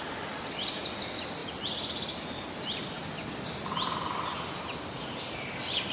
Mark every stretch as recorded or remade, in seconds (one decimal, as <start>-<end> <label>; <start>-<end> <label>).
0.0-5.9 recorded